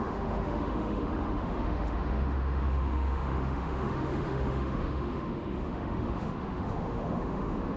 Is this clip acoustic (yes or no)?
no